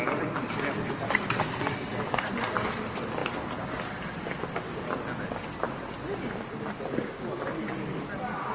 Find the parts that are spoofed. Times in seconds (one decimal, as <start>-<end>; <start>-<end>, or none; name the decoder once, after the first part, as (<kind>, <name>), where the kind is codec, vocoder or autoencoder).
none